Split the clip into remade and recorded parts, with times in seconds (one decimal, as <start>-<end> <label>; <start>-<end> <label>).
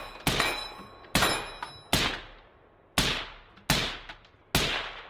0.0-5.1 recorded